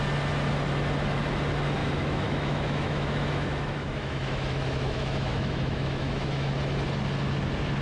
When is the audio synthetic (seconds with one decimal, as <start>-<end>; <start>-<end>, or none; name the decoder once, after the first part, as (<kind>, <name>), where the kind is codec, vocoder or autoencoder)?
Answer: 1.8-6.5 (autoencoder, DAC-VAE)